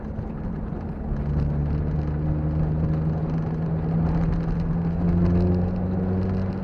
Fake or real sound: real